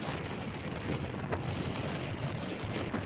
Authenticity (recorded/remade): recorded